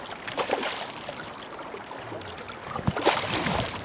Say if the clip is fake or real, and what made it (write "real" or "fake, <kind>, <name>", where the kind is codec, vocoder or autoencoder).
real